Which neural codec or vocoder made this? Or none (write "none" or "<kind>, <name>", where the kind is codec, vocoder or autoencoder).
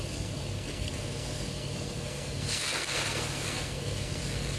codec, SNAC